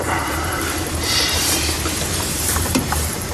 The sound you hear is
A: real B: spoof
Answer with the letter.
B